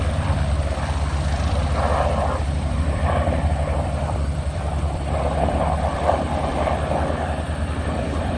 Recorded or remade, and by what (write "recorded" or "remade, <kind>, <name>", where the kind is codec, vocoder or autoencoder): remade, vocoder, BigVGAN v2